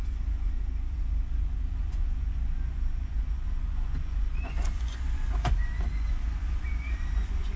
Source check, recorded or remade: remade